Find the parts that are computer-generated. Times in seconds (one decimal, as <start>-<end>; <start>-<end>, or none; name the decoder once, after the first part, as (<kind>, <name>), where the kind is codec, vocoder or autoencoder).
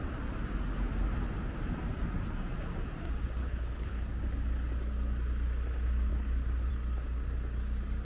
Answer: 3.4-4.0 (codec, HILCodec)